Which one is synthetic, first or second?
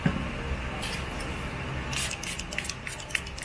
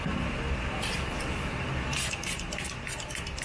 second